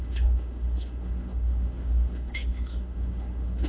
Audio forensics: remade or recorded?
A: remade